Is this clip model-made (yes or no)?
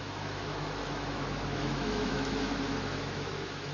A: yes